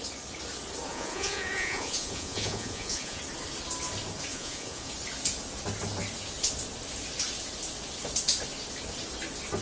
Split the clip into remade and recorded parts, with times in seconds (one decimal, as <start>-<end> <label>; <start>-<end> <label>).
0.0-0.9 recorded; 0.9-3.2 remade; 3.2-4.3 recorded; 4.3-4.9 remade; 4.9-9.6 recorded